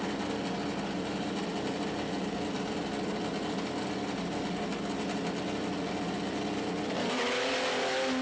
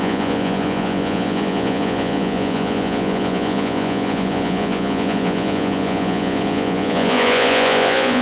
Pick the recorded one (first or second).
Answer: first